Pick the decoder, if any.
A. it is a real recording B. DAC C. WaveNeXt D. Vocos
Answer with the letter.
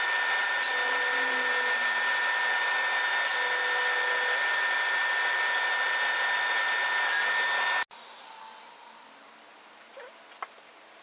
A